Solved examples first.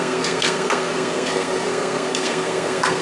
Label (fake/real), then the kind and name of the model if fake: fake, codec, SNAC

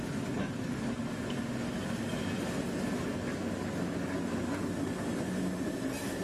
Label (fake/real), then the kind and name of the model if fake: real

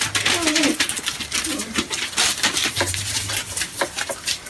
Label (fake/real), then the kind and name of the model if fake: real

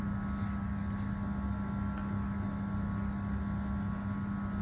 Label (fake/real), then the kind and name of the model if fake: real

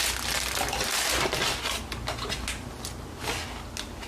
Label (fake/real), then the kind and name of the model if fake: real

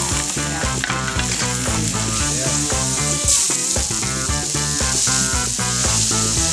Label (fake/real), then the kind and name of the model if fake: real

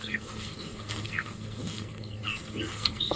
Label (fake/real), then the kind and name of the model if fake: fake, codec, SNAC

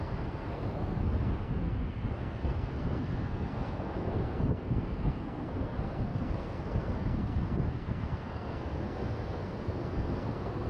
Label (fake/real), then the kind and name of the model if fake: fake, codec, SNAC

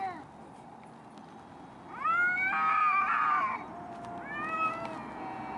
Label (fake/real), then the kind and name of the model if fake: real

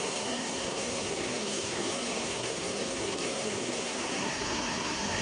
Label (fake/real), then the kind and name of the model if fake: fake, codec, SNAC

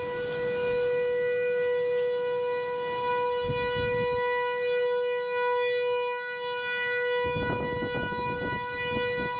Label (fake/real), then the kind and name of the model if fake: real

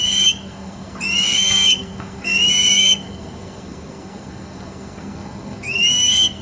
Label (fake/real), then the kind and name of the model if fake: fake, codec, SNAC